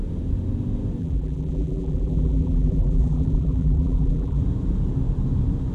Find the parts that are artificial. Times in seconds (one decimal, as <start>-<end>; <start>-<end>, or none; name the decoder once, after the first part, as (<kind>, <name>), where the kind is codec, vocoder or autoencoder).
1.0-4.4 (vocoder, BigVGAN v2)

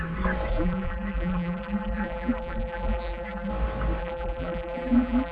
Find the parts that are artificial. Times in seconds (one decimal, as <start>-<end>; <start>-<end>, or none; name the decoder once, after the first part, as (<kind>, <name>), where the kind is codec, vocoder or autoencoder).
0.5-3.5 (vocoder, BigVGAN v2); 4.0-5.3

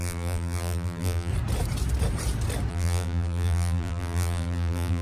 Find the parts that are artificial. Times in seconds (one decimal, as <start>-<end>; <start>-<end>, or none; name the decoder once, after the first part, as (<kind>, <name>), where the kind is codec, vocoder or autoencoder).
0.0-1.3 (vocoder, BigVGAN v2); 2.7-5.0

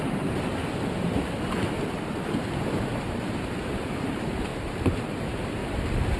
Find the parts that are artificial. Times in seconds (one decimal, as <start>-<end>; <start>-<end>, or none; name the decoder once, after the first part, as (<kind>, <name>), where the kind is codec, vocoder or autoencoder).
0.0-0.5 (vocoder, BigVGAN v2); 3.1-4.5; 5.1-6.2

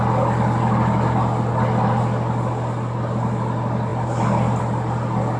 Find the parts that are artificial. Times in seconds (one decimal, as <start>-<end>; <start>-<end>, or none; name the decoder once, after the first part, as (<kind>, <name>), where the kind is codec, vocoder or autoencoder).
3.9-4.6 (vocoder, BigVGAN v2)

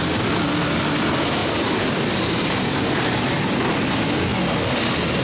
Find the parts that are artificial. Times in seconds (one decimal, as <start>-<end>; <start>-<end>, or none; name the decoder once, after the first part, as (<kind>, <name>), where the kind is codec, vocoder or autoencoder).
1.4-3.6 (vocoder, BigVGAN v2)

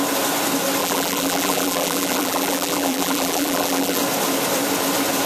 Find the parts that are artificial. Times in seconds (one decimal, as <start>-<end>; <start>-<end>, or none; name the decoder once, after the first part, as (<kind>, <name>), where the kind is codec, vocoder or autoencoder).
0.8-4.0 (vocoder, BigVGAN v2)

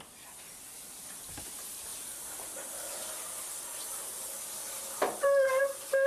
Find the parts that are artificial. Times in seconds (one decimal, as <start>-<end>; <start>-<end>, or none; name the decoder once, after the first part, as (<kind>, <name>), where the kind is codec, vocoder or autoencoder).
none